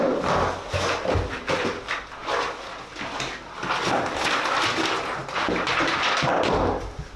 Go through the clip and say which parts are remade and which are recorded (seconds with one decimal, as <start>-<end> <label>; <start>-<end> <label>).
0.0-7.2 recorded